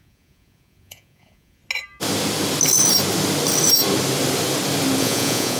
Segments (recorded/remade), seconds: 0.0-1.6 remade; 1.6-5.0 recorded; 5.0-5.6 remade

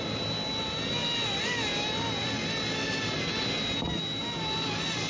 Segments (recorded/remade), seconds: 0.0-5.1 recorded

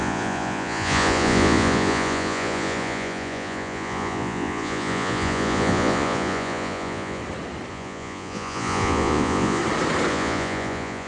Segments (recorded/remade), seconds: 0.0-7.2 remade; 7.2-7.7 recorded; 7.7-9.6 remade; 9.6-10.1 recorded; 10.1-11.1 remade

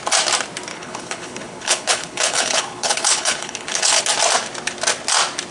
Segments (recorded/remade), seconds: 0.0-0.7 recorded; 0.7-4.0 remade; 4.0-5.5 recorded

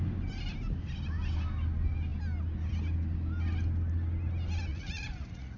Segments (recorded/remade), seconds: 0.0-4.7 recorded; 4.7-5.6 remade

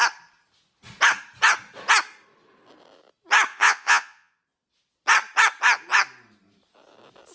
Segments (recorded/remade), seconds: 0.0-3.5 recorded; 3.5-4.4 remade; 4.4-7.3 recorded